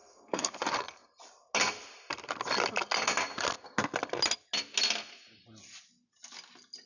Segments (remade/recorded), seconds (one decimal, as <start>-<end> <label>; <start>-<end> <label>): 0.0-0.5 remade; 0.5-6.9 recorded